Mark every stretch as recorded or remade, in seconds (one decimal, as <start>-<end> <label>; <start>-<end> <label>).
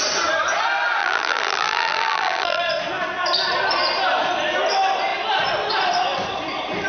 0.0-1.0 recorded; 1.0-2.6 remade; 2.6-6.9 recorded